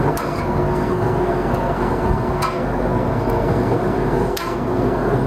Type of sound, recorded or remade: remade